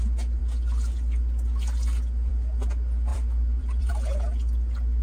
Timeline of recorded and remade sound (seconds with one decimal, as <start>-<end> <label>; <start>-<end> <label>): 0.0-3.1 recorded; 3.1-3.9 remade; 3.9-5.0 recorded